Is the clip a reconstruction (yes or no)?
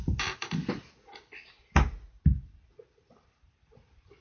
no